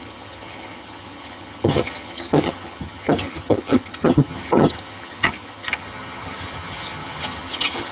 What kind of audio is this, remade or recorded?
remade